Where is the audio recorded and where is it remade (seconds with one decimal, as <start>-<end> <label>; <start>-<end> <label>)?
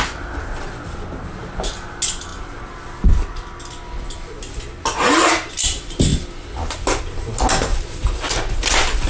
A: 0.0-7.7 recorded; 7.7-8.4 remade; 8.4-9.1 recorded